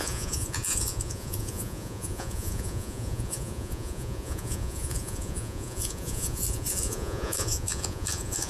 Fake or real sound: fake